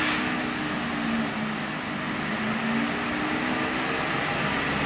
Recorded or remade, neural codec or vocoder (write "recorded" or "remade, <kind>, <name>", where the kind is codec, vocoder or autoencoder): recorded